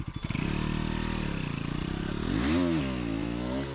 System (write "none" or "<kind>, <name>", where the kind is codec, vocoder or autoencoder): none